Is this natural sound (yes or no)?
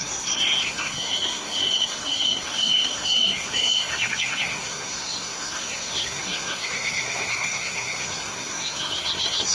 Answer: no